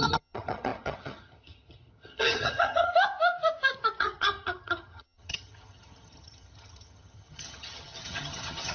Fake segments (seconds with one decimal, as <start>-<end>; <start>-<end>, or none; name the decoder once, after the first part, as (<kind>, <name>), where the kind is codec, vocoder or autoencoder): 0.0-2.9 (vocoder, HiFi-GAN); 4.0-8.7